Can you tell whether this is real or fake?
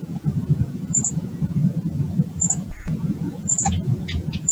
fake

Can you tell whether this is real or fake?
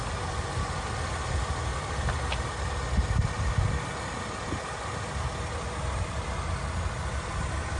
real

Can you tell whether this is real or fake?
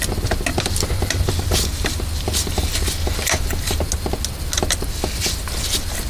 real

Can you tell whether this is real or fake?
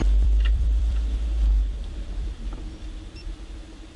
fake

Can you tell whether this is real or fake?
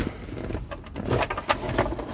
real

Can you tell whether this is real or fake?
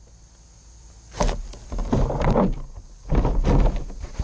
real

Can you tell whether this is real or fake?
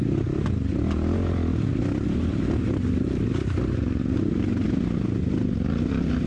real